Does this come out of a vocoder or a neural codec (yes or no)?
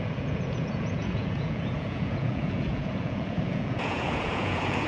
yes